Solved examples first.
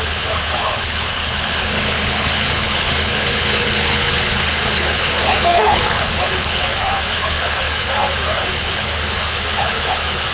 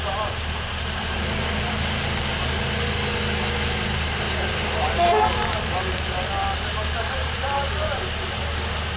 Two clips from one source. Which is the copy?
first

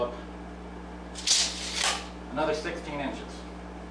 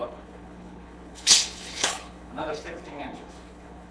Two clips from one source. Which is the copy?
second